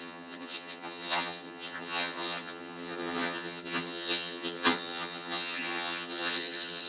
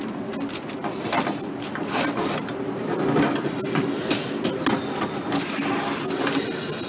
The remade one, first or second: first